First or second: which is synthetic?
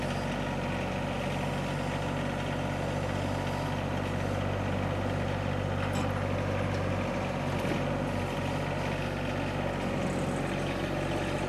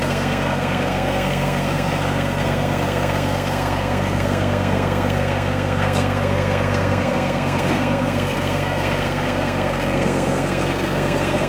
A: second